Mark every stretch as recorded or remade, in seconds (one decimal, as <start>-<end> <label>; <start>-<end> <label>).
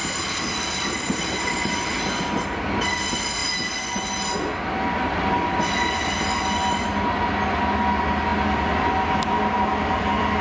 0.0-1.9 remade; 1.9-8.3 recorded; 8.3-10.4 remade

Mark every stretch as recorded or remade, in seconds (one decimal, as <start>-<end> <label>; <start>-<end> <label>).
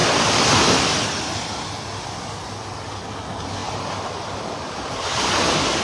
0.0-0.8 remade; 0.8-5.8 recorded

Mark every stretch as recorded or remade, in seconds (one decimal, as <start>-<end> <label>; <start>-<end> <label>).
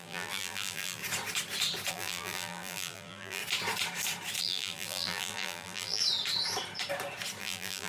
0.0-1.0 remade; 1.0-1.9 recorded; 1.9-3.4 remade; 3.4-4.4 recorded; 4.4-6.0 remade; 6.0-7.4 recorded; 7.4-7.9 remade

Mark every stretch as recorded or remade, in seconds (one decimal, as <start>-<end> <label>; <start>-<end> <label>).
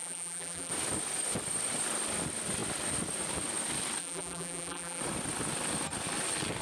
0.0-0.7 remade; 0.7-4.0 recorded; 4.0-5.0 remade; 5.0-6.6 recorded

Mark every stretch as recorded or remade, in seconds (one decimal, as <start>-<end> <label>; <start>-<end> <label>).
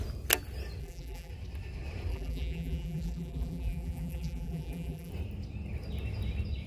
0.0-0.8 recorded; 0.8-1.3 remade; 1.3-2.1 recorded; 2.1-5.1 remade; 5.1-6.7 recorded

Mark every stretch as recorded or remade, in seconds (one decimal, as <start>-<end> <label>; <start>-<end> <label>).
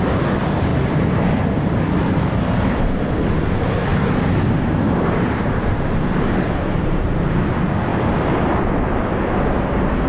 0.0-3.9 recorded; 3.9-7.1 remade; 7.1-10.1 recorded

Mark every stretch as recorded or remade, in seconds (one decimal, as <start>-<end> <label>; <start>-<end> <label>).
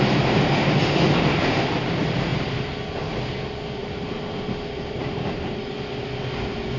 0.0-3.8 recorded; 3.8-5.5 remade; 5.5-6.8 recorded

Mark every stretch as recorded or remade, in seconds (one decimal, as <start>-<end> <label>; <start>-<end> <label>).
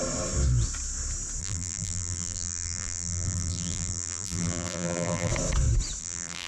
0.0-1.4 recorded; 1.4-5.3 remade; 5.3-6.0 recorded; 6.0-6.5 remade